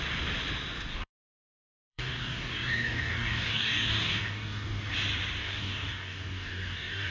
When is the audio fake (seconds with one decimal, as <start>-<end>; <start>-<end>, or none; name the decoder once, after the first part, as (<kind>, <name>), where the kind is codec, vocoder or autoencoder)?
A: 0.9-4.8 (codec, DAC); 5.4-7.1